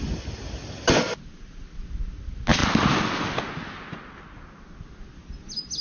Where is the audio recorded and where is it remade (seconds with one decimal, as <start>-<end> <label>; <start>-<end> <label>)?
0.0-5.8 recorded